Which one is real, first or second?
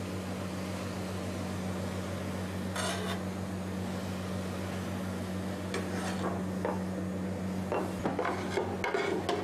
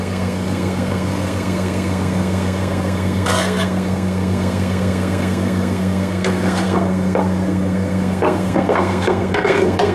first